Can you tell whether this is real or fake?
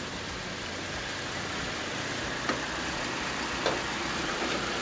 fake